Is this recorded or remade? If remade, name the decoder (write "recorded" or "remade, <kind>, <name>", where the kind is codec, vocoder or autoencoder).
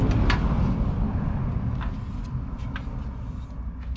recorded